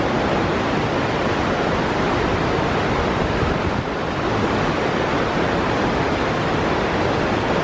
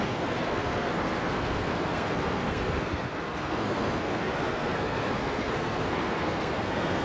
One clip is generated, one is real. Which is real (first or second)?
first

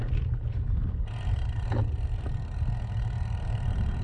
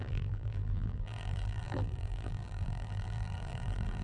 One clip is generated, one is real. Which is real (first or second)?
first